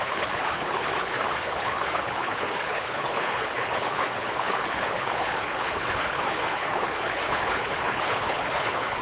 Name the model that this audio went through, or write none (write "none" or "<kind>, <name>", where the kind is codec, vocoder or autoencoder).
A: codec, HILCodec